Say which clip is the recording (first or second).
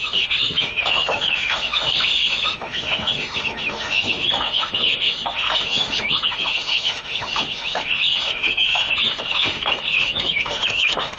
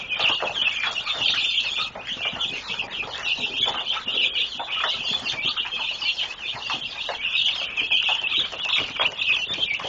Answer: second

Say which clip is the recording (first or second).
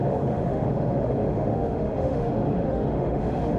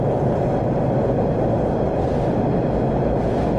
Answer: second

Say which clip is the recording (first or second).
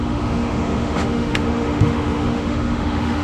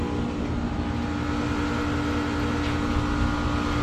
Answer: second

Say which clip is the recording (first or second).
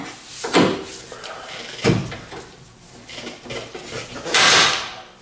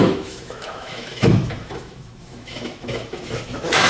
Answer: first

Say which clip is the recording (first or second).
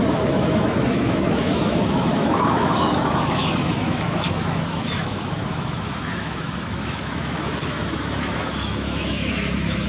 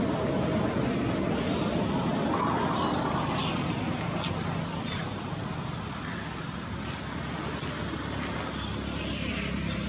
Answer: second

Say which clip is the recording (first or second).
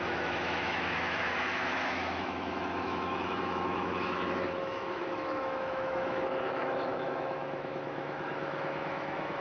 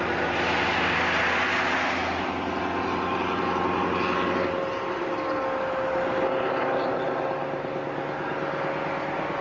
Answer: second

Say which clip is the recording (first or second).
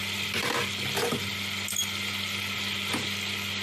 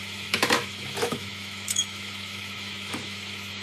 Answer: first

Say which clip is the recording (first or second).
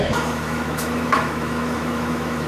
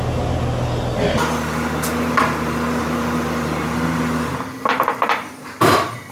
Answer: second